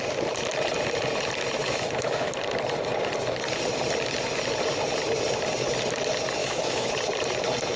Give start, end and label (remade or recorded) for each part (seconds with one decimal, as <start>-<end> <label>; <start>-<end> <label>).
0.0-1.6 recorded; 1.6-2.3 remade; 2.3-6.4 recorded; 6.4-6.9 remade; 6.9-7.8 recorded